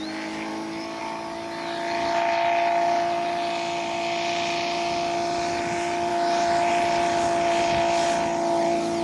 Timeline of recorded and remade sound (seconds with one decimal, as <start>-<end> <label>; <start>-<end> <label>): 0.0-0.5 recorded; 0.5-1.0 remade; 1.0-6.1 recorded; 6.1-6.7 remade; 6.7-9.0 recorded